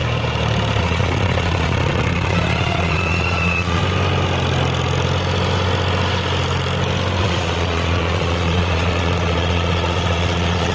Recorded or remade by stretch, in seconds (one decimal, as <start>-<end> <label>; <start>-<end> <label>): 0.0-0.8 recorded; 0.8-3.8 remade; 3.8-7.2 recorded; 7.2-10.7 remade